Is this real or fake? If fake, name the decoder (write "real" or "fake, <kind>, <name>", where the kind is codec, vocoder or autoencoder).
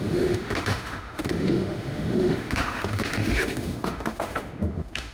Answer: fake, autoencoder, DAC-VAE